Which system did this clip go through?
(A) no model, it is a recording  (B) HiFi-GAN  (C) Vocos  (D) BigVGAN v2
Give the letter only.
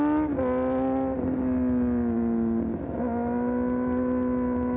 A